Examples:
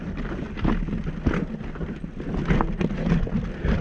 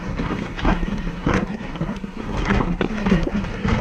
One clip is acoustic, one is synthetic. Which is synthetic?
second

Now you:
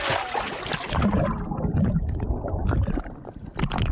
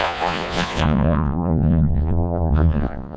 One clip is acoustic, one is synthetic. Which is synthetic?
second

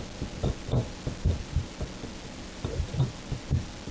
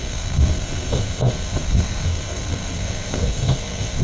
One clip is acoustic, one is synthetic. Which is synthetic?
second